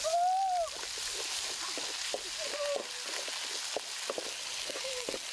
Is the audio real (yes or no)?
yes